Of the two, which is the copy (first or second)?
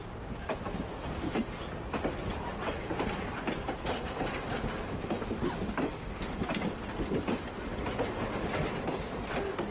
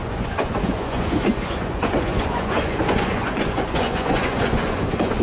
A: second